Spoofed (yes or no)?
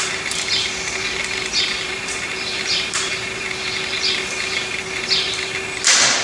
no